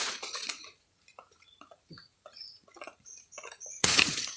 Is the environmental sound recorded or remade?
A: remade